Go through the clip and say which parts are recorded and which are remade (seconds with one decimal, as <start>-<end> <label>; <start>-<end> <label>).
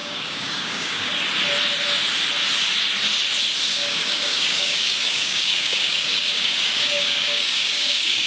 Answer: 0.0-1.1 remade; 1.1-3.7 recorded; 3.7-8.3 remade